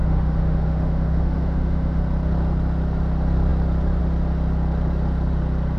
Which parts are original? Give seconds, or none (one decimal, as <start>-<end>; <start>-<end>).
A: 2.0-5.8